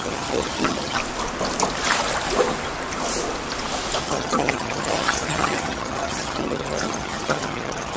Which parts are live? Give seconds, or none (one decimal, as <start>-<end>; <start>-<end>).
1.0-4.0